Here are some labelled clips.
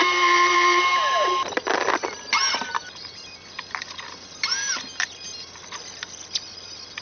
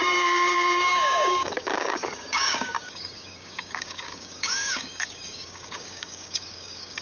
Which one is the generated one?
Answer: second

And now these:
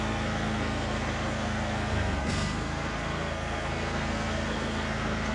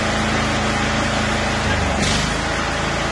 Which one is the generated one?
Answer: first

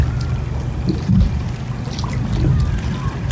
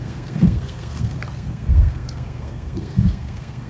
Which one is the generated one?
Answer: second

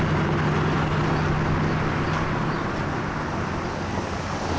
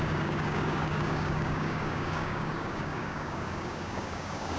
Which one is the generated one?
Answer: second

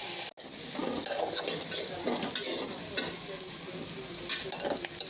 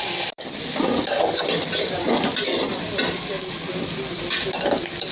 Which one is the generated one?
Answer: second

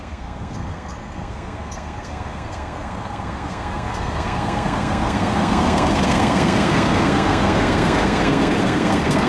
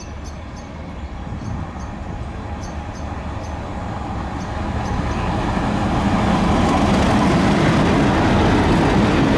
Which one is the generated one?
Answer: first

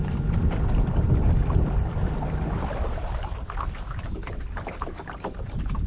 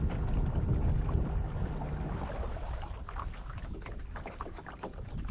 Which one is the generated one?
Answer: first